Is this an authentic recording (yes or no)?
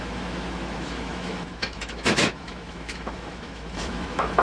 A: no